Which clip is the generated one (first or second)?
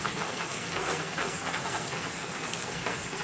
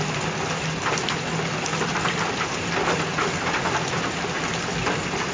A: first